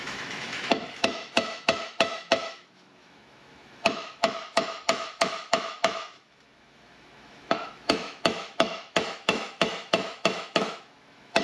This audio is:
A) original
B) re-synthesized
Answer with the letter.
B